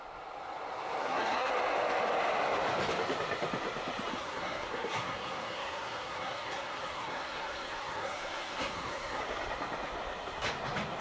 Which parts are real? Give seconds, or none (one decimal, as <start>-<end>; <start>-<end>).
0.0-1.0; 1.5-4.1; 9.2-11.0